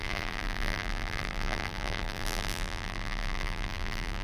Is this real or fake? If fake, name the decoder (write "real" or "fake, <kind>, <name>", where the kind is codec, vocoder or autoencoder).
fake, vocoder, BigVGAN v2